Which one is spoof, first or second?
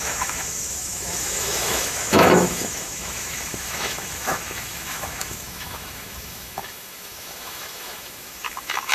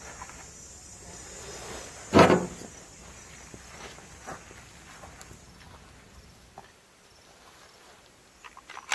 first